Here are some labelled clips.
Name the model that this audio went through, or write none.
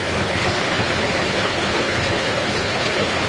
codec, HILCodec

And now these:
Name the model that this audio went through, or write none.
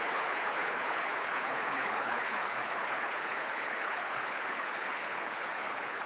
codec, HILCodec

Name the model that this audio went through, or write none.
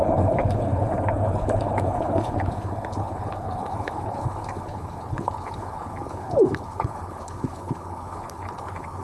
codec, HILCodec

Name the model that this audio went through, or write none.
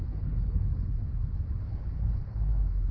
codec, HILCodec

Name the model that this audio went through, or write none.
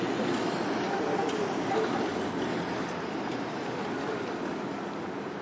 none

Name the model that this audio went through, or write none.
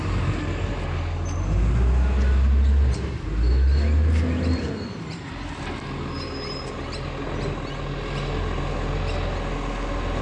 none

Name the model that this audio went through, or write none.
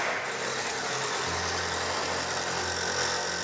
none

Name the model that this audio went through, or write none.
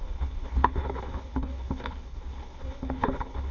codec, HILCodec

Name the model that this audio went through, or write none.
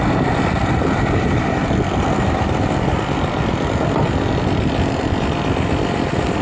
none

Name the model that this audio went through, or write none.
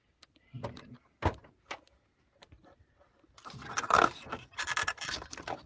none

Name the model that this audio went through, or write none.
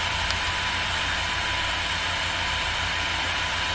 none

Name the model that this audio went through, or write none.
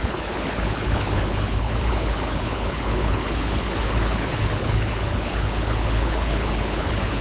codec, HILCodec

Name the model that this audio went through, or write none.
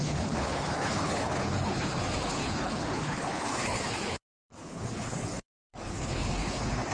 codec, HILCodec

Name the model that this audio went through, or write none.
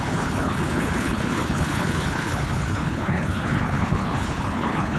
codec, HILCodec